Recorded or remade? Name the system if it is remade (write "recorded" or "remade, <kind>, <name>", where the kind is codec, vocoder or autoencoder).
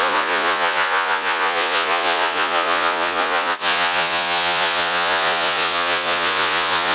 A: remade, vocoder, Vocos